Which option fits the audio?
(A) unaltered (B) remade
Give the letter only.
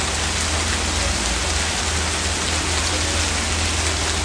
A